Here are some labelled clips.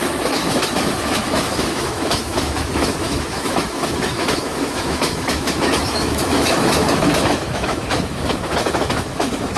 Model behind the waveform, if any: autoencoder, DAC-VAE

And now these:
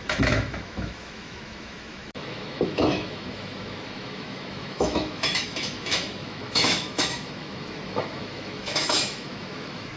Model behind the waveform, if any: autoencoder, DAC-VAE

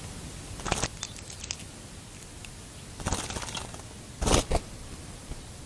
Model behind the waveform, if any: none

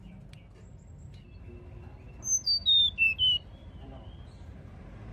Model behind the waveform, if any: none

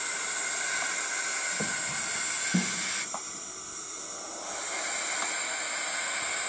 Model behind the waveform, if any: none